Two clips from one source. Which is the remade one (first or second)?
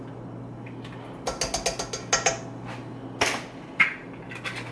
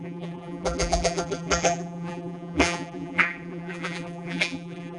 second